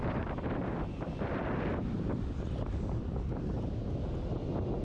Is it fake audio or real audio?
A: real